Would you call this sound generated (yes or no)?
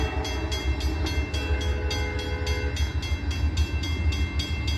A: no